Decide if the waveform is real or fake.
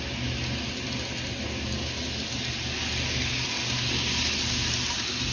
real